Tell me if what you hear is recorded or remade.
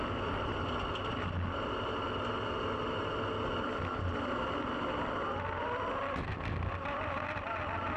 recorded